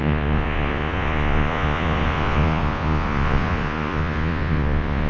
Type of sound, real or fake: fake